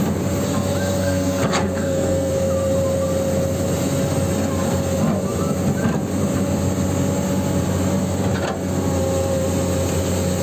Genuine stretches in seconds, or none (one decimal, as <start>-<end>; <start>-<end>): 0.0-1.0; 2.3-10.4